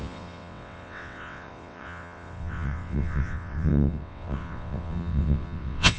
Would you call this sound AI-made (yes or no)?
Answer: yes